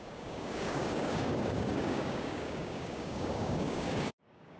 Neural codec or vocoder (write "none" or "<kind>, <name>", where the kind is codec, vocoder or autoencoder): codec, DAC